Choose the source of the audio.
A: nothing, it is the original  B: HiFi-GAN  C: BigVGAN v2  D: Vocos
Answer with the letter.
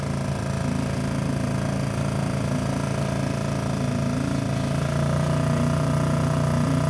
A